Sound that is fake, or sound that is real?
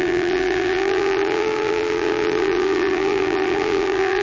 fake